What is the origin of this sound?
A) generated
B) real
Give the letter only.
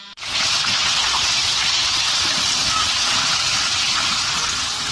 A